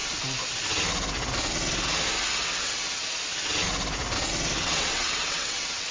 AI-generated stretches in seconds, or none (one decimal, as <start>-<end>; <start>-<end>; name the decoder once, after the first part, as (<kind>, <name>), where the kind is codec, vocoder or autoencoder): 4.6-5.9 (vocoder, WaveNeXt)